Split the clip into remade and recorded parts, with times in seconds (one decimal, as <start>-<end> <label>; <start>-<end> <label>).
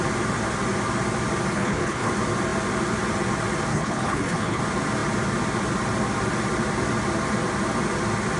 0.0-1.5 recorded; 1.5-2.1 remade; 2.1-3.7 recorded; 3.7-4.6 remade; 4.6-8.4 recorded